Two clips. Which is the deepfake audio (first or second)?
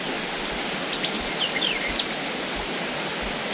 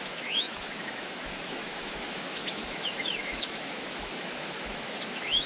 second